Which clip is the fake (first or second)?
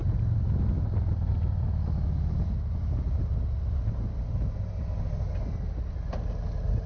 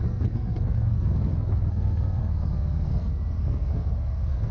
second